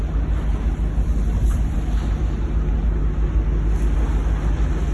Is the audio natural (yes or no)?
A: yes